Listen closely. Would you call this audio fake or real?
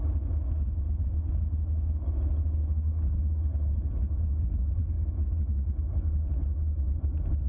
real